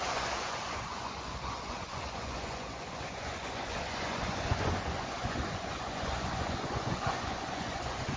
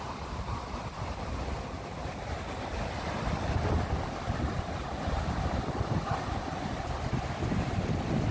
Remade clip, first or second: first